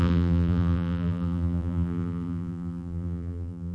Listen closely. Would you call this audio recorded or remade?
remade